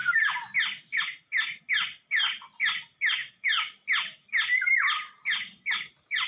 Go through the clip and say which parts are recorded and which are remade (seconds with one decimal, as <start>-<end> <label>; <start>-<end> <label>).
0.0-6.3 recorded